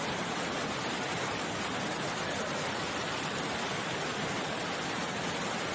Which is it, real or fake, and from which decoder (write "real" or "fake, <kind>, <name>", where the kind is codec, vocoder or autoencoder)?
real